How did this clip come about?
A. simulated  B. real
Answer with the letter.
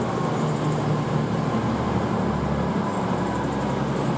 B